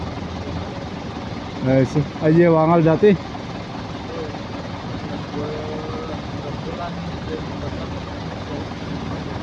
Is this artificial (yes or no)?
no